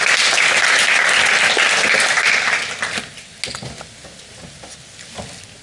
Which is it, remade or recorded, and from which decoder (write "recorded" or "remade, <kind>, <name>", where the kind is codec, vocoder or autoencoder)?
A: recorded